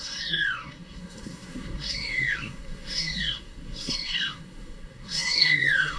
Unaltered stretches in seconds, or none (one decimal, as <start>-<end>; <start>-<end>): none